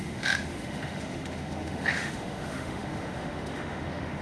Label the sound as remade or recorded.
remade